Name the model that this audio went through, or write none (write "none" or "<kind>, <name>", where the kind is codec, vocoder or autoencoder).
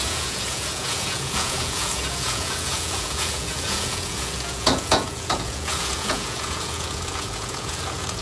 vocoder, Vocos